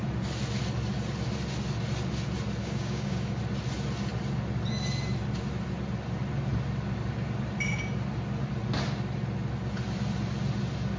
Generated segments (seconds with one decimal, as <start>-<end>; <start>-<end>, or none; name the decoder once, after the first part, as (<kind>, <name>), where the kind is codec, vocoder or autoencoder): 2.6-3.4 (codec, DAC)